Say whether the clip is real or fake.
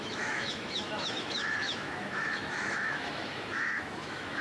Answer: fake